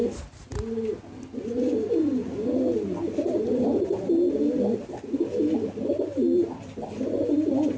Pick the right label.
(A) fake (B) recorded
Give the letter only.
B